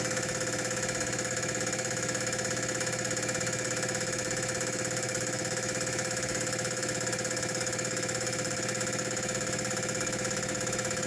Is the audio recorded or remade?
remade